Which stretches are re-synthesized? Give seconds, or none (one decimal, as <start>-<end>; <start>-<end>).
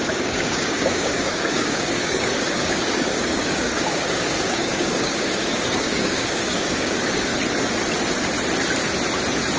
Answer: 0.0-7.3